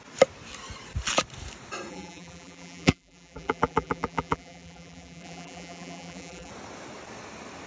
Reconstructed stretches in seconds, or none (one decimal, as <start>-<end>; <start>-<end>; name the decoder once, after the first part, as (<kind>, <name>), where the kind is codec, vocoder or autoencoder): 1.9-6.5 (vocoder, BigVGAN v2)